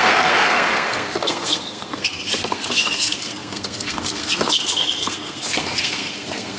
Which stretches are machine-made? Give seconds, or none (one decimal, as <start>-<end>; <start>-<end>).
0.0-6.6